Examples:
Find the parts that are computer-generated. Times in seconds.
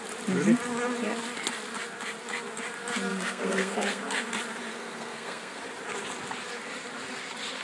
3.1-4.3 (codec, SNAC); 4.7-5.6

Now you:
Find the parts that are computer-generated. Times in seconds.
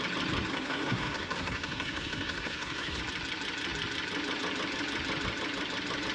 0.5-3.0 (codec, SNAC)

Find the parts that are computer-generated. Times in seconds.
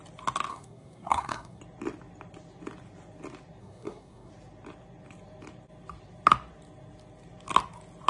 0.5-1.6 (codec, SNAC); 3.6-4.3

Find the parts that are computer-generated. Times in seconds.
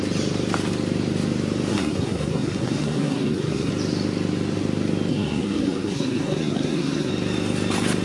1.7-3.7 (codec, SNAC); 5.1-7.1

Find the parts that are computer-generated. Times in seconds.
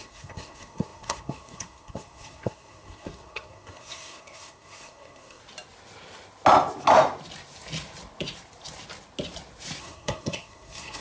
0.0-5.4 (codec, SNAC); 9.8-11.0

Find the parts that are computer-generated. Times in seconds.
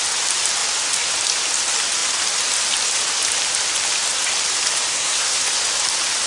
4.9-5.4 (codec, SNAC)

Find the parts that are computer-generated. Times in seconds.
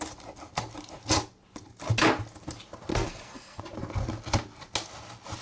2.9-3.6 (codec, SNAC)